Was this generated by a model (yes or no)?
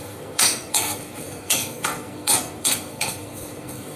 yes